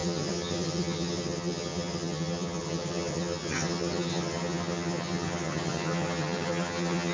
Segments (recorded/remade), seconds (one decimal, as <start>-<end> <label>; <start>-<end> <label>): 0.0-7.1 remade